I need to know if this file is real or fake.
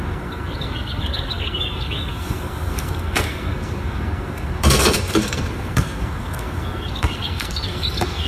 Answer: fake